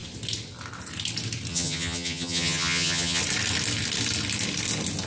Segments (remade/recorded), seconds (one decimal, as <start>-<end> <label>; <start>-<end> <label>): 0.0-1.5 recorded; 1.5-3.2 remade; 3.2-5.1 recorded